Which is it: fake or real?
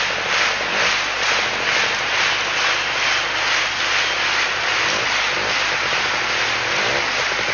real